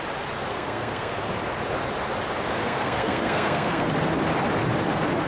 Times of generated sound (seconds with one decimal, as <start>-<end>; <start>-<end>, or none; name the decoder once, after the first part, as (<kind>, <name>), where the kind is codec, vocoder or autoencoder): 0.5-1.2 (codec, SNAC); 2.6-3.9